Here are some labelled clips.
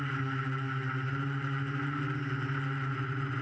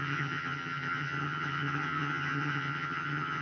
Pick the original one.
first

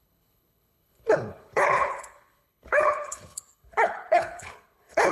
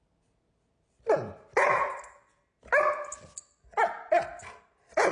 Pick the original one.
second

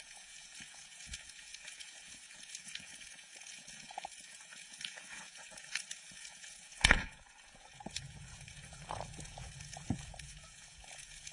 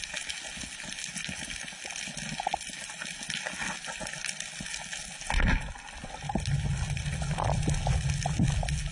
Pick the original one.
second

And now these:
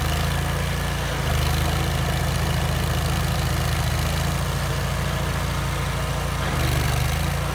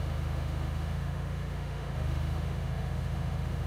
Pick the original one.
first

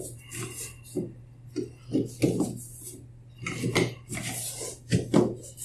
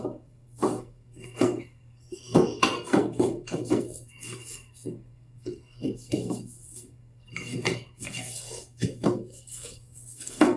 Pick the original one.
first